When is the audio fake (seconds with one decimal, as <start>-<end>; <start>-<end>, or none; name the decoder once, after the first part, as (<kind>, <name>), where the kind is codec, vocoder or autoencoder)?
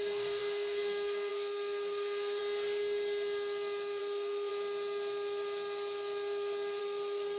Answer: 0.0-2.4 (codec, SNAC); 4.0-4.5; 6.8-7.4